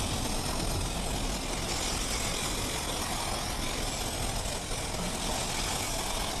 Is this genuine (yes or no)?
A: yes